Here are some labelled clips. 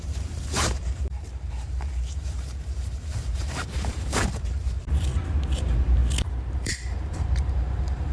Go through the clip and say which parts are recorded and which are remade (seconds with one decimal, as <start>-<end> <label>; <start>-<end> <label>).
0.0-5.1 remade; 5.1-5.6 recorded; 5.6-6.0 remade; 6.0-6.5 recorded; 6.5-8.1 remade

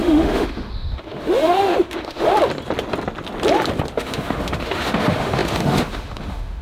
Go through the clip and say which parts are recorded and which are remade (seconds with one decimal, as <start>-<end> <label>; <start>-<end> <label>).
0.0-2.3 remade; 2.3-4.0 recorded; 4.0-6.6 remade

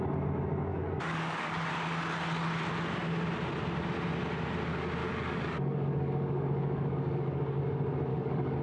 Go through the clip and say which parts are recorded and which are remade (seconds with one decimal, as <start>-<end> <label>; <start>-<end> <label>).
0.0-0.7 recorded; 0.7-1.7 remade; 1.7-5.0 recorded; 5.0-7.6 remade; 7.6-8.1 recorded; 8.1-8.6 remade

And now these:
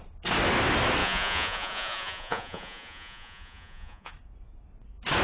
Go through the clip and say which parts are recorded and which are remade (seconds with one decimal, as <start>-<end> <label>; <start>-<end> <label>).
0.0-1.0 recorded; 1.0-4.1 remade; 4.1-5.2 recorded

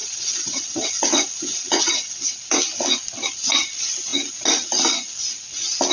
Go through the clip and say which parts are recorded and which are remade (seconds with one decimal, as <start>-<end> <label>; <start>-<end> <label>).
0.0-2.2 remade; 2.2-5.9 recorded